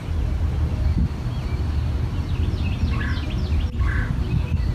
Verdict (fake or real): real